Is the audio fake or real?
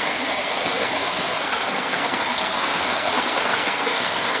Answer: fake